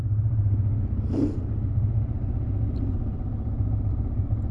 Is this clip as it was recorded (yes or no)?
no